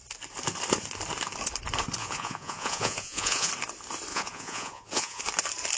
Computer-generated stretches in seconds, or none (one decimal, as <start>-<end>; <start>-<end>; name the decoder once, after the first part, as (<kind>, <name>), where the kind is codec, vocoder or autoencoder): 2.0-3.5 (vocoder, Vocos); 4.1-5.2